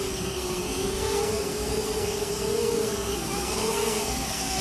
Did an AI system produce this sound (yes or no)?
yes